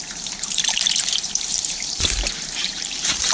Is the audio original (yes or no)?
no